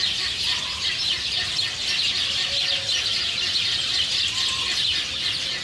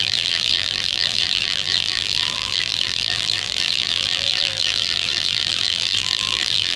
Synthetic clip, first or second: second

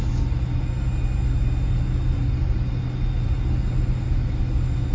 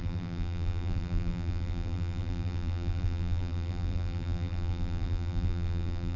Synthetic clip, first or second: second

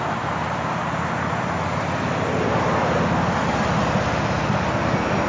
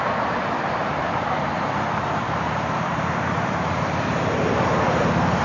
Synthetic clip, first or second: second